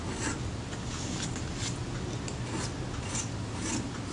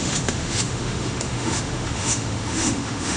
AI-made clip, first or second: second